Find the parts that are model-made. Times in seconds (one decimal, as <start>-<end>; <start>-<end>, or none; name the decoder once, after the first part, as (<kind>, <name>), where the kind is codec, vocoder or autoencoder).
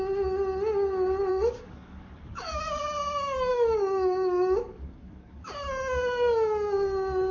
1.3-2.8 (codec, DAC); 3.5-5.5